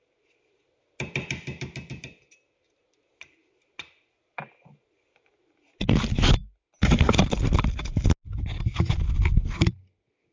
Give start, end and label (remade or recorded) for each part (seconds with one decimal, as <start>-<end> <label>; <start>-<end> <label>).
0.0-10.3 recorded